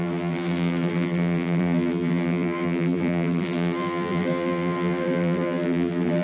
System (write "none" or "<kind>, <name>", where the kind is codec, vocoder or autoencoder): vocoder, BigVGAN v2